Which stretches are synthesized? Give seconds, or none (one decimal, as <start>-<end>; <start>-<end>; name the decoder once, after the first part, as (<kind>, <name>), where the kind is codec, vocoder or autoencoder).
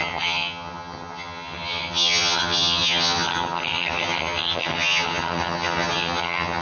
0.0-6.6 (vocoder, HiFi-GAN)